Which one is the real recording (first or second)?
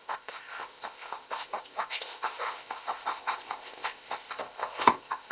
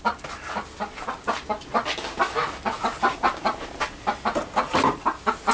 second